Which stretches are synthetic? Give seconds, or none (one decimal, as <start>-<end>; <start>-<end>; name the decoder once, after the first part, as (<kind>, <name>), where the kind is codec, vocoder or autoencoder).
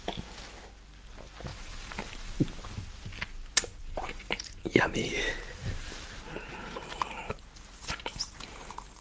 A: 1.5-2.7 (vocoder, BigVGAN v2); 3.8-9.0